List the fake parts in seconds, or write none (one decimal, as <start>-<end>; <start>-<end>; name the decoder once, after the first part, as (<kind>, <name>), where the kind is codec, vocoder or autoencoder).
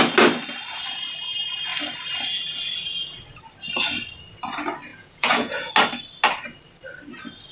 4.9-5.7 (vocoder, Vocos)